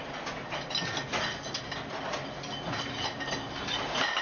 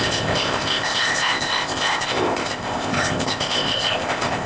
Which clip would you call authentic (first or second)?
first